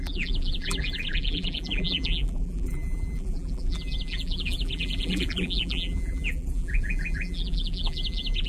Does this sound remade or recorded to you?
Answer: remade